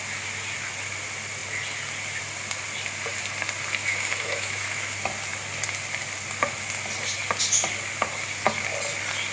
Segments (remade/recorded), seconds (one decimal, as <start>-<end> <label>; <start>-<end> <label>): 0.0-3.8 recorded; 3.8-4.8 remade; 4.8-9.3 recorded